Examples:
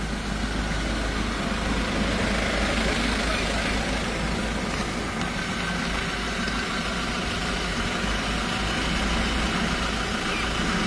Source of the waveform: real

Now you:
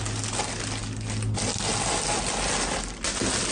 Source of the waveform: real